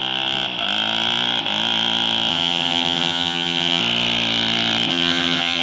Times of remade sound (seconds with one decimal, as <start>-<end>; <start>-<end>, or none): 2.3-3.8; 4.9-5.6